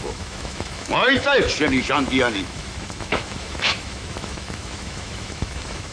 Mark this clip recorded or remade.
remade